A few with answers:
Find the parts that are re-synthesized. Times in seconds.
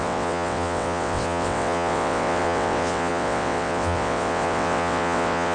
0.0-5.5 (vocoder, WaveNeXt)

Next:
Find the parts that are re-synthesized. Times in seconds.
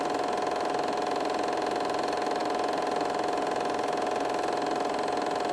none